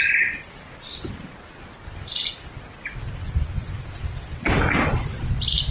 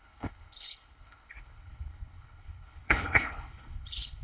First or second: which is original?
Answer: first